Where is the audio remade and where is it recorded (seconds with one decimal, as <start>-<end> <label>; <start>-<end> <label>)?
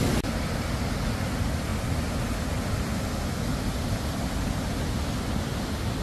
0.0-6.0 recorded